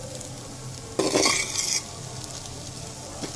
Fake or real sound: real